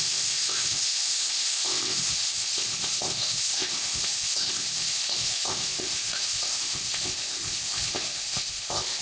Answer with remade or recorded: remade